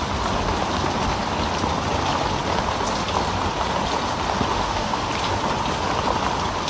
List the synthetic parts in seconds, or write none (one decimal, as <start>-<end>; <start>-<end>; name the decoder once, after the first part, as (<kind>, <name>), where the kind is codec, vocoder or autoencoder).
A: 4.5-5.0 (autoencoder, DAC-VAE)